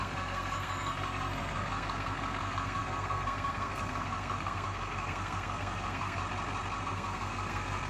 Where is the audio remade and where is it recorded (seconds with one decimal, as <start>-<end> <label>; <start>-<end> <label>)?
0.0-6.2 remade; 6.2-6.8 recorded; 6.8-7.9 remade